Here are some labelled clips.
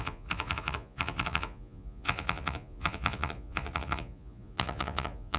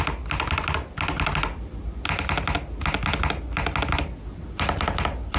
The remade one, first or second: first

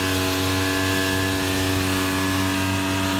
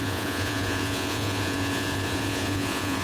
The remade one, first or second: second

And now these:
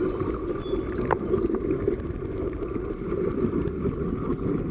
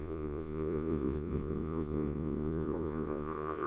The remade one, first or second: second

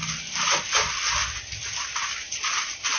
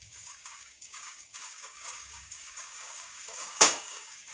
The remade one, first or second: second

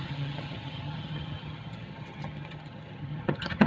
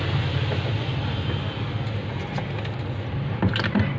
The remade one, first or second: first